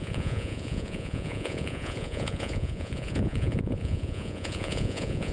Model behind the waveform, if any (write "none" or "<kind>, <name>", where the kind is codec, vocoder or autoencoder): vocoder, Vocos